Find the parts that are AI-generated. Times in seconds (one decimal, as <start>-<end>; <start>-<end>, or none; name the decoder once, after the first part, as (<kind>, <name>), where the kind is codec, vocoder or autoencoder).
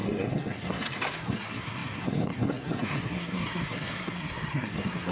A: 0.0-5.1 (codec, SNAC)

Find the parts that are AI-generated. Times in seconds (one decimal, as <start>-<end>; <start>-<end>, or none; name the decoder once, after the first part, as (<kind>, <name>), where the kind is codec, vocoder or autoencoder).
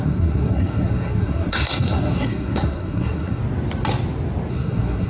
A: 0.0-3.4 (codec, SNAC); 4.5-5.1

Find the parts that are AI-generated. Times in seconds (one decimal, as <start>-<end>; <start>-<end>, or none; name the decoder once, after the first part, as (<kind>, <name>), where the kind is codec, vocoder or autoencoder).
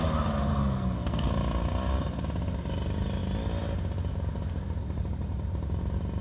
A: 0.5-1.3 (codec, SNAC)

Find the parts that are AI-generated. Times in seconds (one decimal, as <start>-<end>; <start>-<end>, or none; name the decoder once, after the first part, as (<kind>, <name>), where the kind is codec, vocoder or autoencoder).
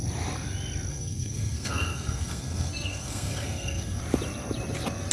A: 0.9-4.0 (codec, SNAC)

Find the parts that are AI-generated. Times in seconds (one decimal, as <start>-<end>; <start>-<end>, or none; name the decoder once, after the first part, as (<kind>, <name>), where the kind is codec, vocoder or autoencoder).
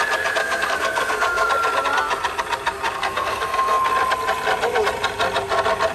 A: 0.4-1.5 (codec, SNAC); 3.0-3.9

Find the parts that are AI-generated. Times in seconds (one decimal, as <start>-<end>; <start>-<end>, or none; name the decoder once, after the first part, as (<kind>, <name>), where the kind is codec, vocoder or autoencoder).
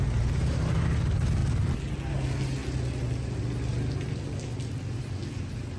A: none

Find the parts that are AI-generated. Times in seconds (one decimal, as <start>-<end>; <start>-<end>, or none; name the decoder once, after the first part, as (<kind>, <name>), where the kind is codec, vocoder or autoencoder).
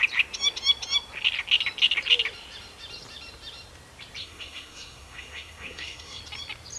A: 4.2-6.2 (codec, SNAC)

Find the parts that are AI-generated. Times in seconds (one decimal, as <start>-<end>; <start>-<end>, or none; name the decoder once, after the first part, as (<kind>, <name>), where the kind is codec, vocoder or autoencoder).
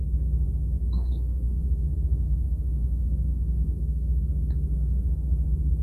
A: 0.8-4.3 (codec, SNAC)